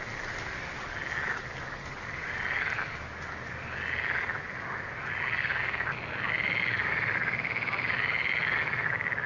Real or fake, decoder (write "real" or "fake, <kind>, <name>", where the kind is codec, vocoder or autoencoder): real